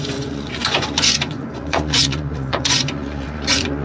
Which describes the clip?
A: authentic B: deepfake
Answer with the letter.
B